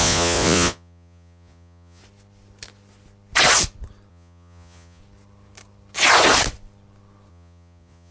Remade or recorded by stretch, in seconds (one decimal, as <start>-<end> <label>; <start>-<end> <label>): 0.0-2.0 remade; 2.0-4.1 recorded; 4.1-5.0 remade; 5.0-7.3 recorded; 7.3-8.1 remade